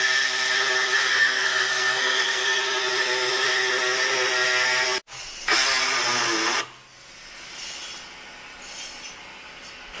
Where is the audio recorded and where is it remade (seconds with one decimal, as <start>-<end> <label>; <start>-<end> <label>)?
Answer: 0.0-1.0 recorded; 1.0-2.4 remade; 2.4-10.0 recorded